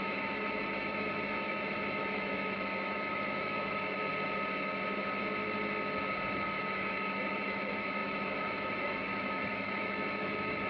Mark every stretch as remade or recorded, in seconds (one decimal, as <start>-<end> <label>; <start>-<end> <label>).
0.0-4.1 remade; 4.1-6.6 recorded; 6.6-10.7 remade